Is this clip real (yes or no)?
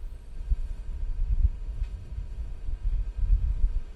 no